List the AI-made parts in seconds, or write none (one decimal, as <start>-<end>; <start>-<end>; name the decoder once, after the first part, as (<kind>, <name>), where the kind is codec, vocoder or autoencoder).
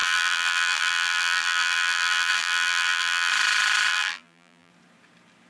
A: 0.0-3.3 (vocoder, BigVGAN v2); 3.9-4.7